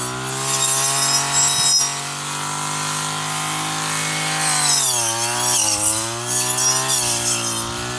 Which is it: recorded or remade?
recorded